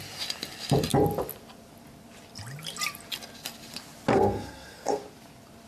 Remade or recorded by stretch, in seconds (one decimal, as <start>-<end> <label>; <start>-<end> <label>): 0.0-4.1 recorded; 4.1-5.0 remade; 5.0-5.7 recorded